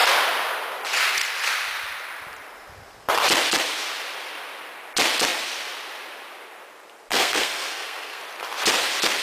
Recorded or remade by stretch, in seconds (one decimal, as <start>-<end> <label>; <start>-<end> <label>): 0.0-7.1 recorded; 7.1-8.2 remade; 8.2-9.2 recorded